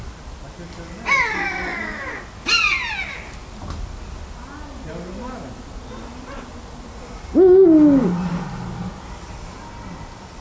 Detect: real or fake real